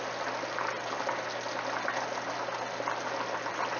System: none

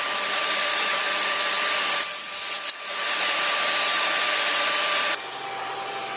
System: vocoder, BigVGAN v2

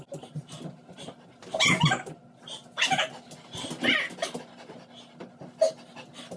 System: none